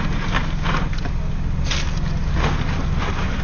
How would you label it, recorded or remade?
recorded